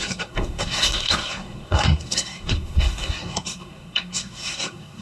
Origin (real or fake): fake